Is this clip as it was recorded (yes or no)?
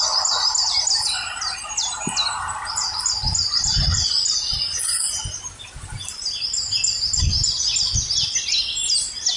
yes